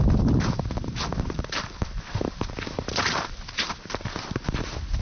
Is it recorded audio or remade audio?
recorded